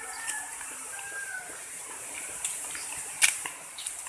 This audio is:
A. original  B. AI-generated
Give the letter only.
B